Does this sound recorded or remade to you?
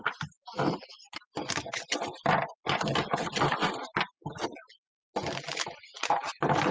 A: recorded